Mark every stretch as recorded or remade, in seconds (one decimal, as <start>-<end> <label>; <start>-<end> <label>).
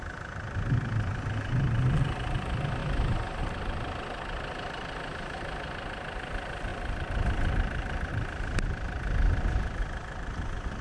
0.0-6.7 recorded; 6.7-8.1 remade; 8.1-10.8 recorded